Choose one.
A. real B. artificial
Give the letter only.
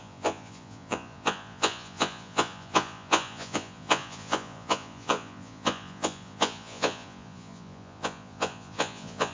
B